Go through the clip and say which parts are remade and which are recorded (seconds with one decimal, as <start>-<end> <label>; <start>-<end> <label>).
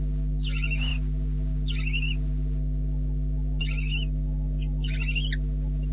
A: 0.0-5.9 recorded